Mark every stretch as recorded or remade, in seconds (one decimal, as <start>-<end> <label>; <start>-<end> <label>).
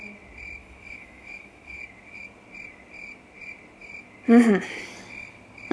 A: 0.0-0.6 recorded; 0.6-1.8 remade; 1.8-5.7 recorded